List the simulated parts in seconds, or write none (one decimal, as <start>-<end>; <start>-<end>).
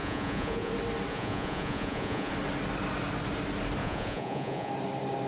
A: 0.0-0.7; 1.1-2.3; 3.8-4.7